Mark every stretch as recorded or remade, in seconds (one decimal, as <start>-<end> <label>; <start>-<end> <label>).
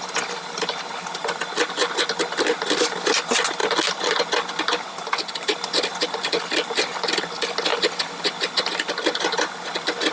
0.0-10.1 recorded